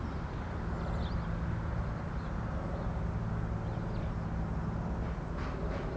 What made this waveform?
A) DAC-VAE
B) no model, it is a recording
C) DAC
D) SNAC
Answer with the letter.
B